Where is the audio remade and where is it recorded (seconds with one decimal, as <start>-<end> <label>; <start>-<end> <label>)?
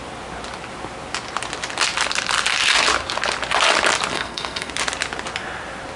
0.0-4.1 recorded; 4.1-4.7 remade; 4.7-6.0 recorded